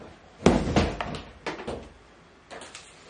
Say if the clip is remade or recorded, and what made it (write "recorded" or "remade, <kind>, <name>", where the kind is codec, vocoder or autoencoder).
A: recorded